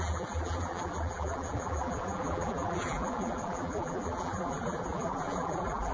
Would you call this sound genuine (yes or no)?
no